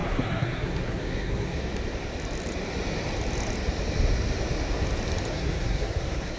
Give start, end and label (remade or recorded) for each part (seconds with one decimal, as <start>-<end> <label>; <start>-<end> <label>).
0.0-1.6 remade; 1.6-5.3 recorded; 5.3-6.4 remade